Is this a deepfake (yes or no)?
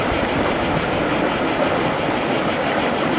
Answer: no